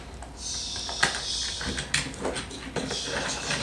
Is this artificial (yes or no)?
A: no